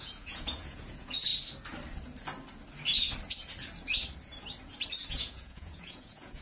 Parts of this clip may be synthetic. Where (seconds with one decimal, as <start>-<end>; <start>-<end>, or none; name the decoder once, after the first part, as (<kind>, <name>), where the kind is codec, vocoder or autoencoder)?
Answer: 0.0-1.3 (vocoder, Vocos); 5.1-6.4